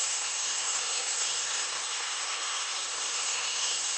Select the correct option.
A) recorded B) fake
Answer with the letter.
B